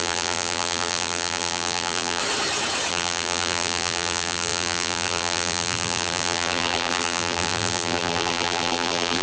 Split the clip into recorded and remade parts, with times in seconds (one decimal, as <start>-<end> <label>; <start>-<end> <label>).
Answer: 0.0-2.2 remade; 2.2-2.9 recorded; 2.9-9.2 remade